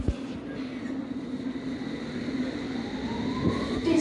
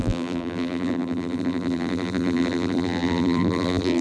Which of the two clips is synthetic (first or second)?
second